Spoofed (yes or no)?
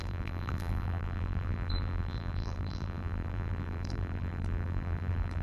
yes